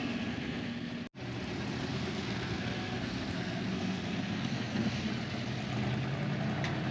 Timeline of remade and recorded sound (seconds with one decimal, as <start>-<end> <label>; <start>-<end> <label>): 0.0-0.9 remade; 0.9-1.9 recorded; 1.9-5.1 remade; 5.1-6.9 recorded